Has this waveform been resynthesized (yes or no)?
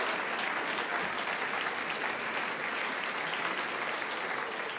no